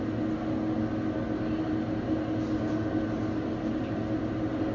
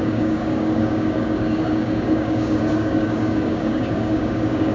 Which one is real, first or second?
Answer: first